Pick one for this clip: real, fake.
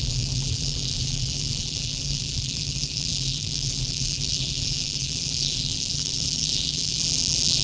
fake